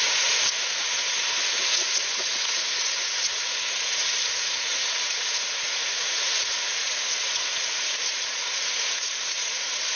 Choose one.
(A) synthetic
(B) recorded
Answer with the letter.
A